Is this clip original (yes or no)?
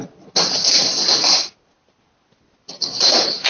yes